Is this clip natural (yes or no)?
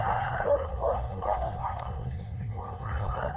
no